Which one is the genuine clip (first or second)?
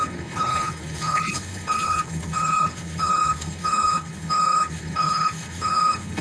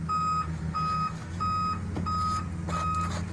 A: second